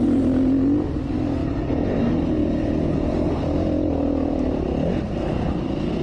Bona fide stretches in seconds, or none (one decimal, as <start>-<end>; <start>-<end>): 0.0-1.4; 2.0-6.0